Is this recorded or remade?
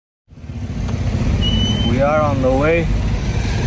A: recorded